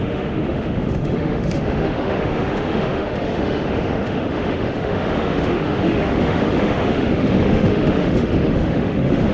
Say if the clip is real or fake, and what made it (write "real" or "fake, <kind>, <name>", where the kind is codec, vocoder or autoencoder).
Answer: fake, autoencoder, DAC-VAE